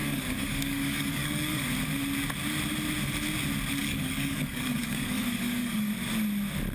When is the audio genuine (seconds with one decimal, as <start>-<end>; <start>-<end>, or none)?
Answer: 1.7-3.8; 5.9-6.7